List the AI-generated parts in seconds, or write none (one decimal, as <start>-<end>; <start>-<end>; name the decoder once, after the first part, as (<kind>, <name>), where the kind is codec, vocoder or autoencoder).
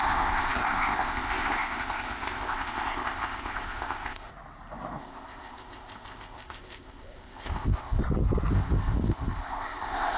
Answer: 0.0-4.3 (codec, ZipCodec); 5.0-8.0; 8.5-10.2